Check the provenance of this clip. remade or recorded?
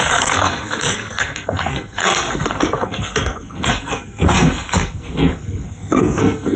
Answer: remade